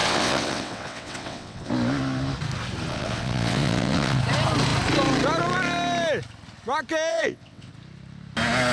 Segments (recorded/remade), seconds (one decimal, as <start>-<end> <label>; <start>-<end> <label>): 0.0-1.7 remade; 1.7-2.9 recorded; 2.9-4.2 remade; 4.2-7.1 recorded; 7.1-7.7 remade; 7.7-8.7 recorded